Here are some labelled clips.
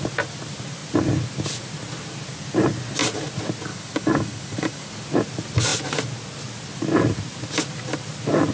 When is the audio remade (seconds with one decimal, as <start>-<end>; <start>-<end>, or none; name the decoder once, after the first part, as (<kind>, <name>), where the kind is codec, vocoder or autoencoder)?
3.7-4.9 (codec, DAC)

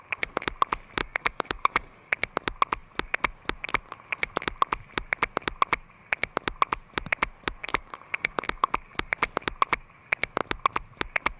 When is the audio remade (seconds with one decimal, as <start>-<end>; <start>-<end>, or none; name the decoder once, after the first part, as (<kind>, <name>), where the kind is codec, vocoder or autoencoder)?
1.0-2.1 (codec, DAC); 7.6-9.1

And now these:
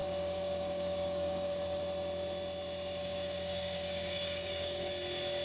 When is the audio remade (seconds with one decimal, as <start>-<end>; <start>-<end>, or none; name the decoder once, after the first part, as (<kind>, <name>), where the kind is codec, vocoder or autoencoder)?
0.0-1.8 (codec, DAC); 3.0-4.9

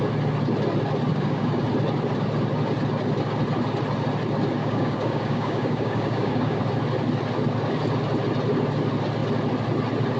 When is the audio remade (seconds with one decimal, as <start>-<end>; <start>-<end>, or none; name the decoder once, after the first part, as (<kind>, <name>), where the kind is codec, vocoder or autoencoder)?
1.1-1.6 (codec, DAC); 4.6-6.6

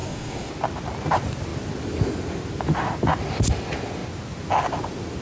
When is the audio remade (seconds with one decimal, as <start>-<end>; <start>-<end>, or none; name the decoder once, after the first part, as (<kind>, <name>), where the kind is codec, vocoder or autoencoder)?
0.0-0.5 (codec, DAC)

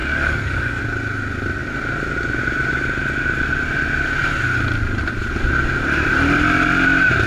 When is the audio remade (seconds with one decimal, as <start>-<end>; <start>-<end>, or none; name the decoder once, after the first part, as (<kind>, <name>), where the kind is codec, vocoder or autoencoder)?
0.0-0.8 (codec, DAC)